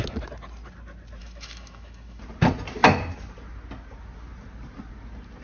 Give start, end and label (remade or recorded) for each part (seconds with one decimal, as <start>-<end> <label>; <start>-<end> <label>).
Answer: 0.0-1.2 recorded; 1.2-2.2 remade; 2.2-5.4 recorded